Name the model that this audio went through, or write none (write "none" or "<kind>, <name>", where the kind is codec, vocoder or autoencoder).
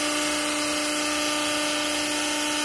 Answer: none